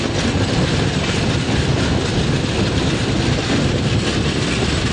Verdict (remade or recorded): recorded